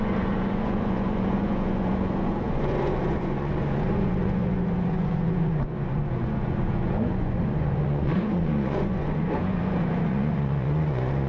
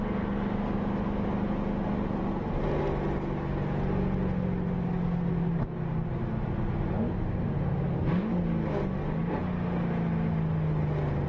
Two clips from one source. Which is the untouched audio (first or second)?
second